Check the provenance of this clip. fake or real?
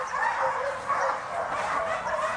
real